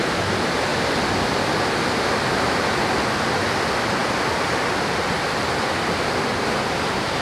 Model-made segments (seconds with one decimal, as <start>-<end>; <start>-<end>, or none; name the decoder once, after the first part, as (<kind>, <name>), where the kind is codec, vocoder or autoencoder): none

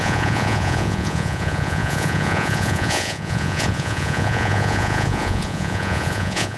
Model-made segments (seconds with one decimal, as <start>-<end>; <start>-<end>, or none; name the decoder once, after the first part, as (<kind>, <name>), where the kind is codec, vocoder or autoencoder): 0.0-6.6 (vocoder, Vocos)